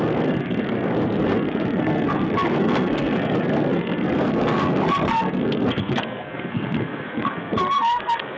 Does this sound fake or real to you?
fake